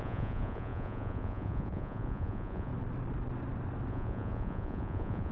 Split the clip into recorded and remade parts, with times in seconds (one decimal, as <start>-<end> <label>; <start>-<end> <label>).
0.0-2.7 remade; 2.7-3.9 recorded; 3.9-5.3 remade